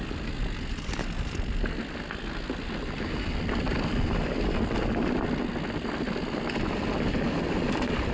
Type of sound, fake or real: real